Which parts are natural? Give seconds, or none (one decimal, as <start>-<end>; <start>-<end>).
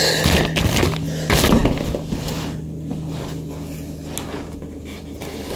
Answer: 0.0-5.6